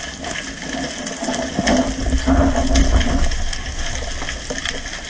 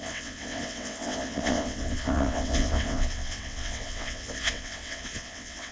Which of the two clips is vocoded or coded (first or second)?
second